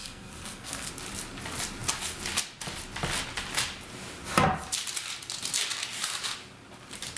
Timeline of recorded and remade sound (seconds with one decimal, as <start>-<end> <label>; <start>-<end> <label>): 0.0-0.9 remade; 0.9-7.2 recorded